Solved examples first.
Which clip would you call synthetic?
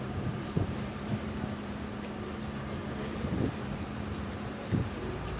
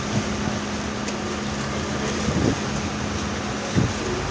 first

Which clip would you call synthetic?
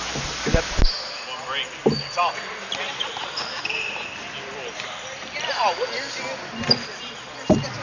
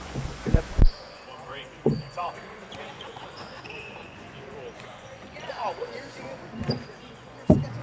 second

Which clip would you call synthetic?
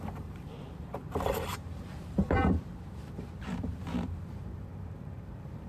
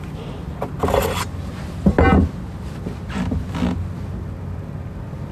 first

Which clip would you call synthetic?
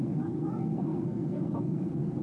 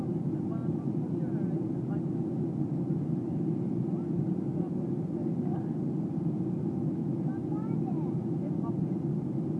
first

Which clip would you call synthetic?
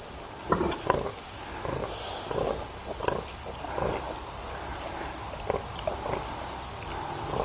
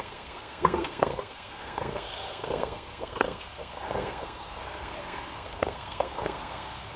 second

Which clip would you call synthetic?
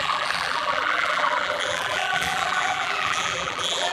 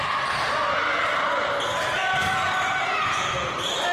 first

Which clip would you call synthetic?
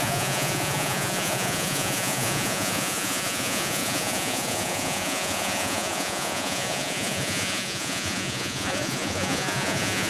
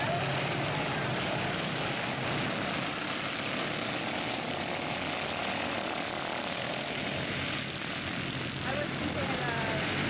first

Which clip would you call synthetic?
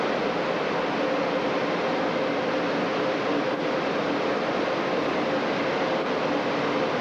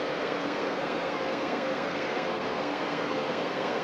second